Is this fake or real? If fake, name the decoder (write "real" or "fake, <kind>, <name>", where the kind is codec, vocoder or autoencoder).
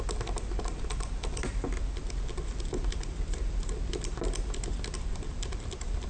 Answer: real